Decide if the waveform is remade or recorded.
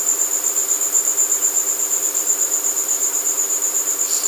remade